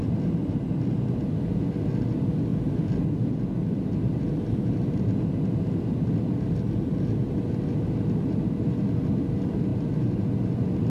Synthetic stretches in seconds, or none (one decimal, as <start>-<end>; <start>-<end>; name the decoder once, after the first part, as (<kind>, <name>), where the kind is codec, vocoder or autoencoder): 9.7-10.3 (vocoder, BigVGAN v2)

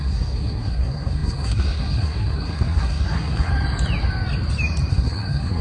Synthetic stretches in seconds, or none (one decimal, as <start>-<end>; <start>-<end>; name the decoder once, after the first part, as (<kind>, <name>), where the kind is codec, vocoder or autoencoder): 0.0-3.5 (codec, SNAC); 4.9-5.6

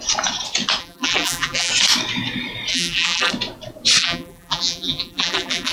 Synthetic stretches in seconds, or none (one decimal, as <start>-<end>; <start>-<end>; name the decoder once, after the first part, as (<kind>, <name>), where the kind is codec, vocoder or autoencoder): 0.8-1.7 (vocoder, BigVGAN v2); 2.7-3.3; 4.0-5.7

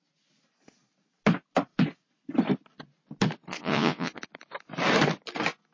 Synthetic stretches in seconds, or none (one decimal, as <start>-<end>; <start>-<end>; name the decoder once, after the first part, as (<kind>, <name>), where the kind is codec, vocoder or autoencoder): 3.5-4.2 (vocoder, Vocos)